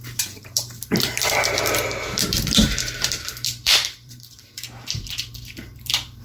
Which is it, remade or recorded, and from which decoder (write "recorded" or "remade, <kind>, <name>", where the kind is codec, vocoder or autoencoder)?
remade, vocoder, BigVGAN v2